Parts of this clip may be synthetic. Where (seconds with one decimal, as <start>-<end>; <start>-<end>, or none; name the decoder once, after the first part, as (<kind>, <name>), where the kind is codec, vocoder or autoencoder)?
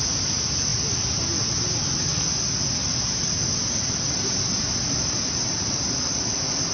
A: 2.8-6.1 (vocoder, BigVGAN v2)